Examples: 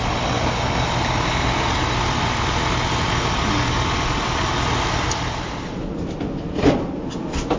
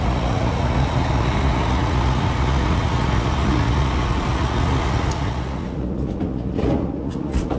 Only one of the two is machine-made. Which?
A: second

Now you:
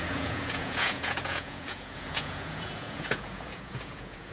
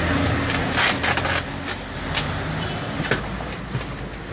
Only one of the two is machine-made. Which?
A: first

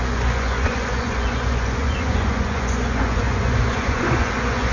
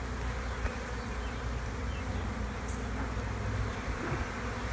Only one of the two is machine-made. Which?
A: first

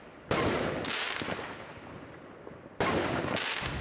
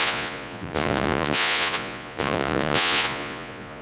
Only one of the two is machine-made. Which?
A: second